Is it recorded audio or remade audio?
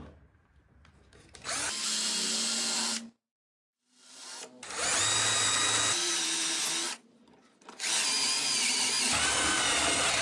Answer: recorded